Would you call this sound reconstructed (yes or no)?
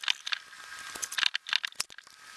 no